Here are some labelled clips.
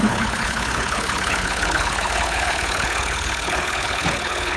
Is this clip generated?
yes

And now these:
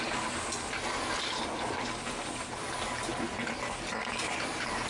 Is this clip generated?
no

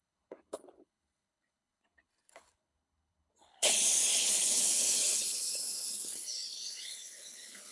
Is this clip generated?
yes